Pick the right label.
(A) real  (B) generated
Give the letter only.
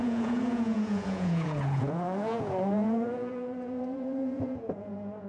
B